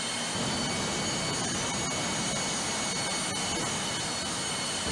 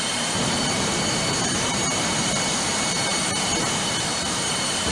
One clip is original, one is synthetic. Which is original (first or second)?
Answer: first